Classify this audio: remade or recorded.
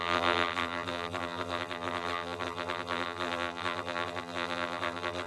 remade